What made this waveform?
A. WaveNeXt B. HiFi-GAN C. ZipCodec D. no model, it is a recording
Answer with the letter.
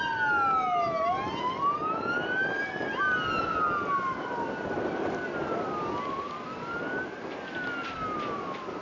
D